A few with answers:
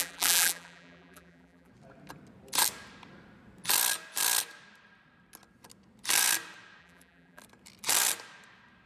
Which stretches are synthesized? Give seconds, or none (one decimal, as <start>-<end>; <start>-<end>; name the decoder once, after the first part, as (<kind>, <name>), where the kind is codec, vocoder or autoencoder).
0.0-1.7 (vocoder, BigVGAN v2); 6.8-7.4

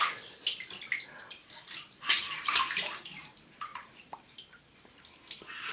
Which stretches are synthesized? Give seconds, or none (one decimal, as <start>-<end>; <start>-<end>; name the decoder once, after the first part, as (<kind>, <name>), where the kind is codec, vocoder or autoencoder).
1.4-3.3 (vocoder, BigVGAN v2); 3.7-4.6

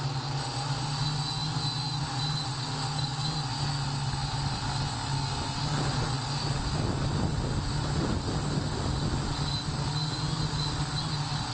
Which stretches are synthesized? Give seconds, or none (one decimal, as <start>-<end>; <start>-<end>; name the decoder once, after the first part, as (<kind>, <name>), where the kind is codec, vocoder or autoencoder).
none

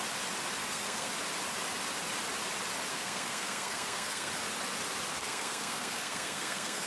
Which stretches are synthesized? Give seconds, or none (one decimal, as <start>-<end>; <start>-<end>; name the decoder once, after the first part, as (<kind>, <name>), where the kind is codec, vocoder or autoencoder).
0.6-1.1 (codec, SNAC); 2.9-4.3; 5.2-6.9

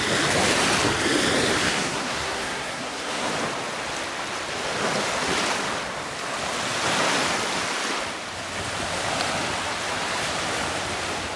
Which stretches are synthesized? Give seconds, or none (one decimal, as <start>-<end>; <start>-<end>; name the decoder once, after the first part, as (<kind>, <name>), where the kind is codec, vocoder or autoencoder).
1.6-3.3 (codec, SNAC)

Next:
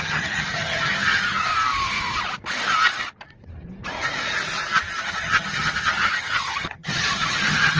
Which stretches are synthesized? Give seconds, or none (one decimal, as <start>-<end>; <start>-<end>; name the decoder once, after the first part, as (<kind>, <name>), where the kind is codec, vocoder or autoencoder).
0.0-1.5 (vocoder, HiFi-GAN); 5.0-7.8